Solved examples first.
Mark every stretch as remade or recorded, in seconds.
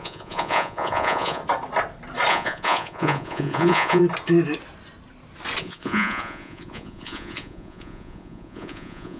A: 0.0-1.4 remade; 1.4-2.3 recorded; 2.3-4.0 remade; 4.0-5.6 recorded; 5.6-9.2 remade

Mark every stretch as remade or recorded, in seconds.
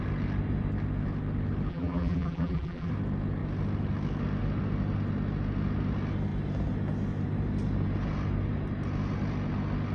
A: 0.0-1.7 recorded; 1.7-2.9 remade; 2.9-9.9 recorded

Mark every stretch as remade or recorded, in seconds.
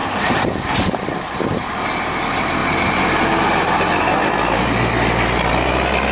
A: 0.0-6.1 recorded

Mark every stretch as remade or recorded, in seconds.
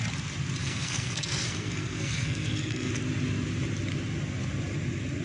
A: 0.0-0.6 recorded; 0.6-2.9 remade; 2.9-5.2 recorded